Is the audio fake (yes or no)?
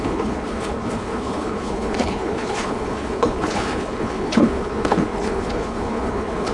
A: yes